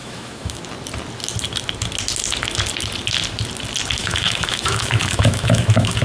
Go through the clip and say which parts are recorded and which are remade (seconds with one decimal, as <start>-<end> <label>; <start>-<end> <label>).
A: 0.0-0.6 remade; 0.6-4.0 recorded; 4.0-6.0 remade